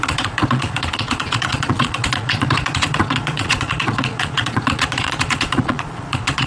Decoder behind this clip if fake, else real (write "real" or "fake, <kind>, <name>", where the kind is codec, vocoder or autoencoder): fake, vocoder, Vocos